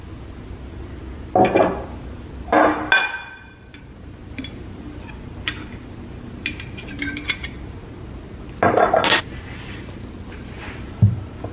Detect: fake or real real